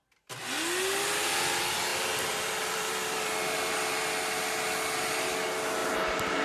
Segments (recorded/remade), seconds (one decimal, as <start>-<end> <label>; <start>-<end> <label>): 0.0-1.9 recorded; 1.9-3.7 remade; 3.7-6.4 recorded